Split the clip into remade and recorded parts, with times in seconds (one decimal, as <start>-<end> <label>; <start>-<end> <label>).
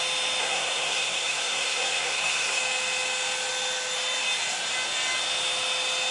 0.0-0.4 recorded; 0.4-2.6 remade; 2.6-6.1 recorded